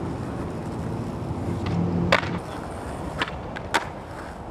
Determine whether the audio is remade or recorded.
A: recorded